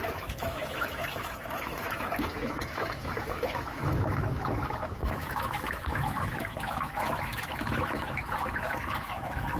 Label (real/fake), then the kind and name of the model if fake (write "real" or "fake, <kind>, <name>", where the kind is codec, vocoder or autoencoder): fake, autoencoder, DAC-VAE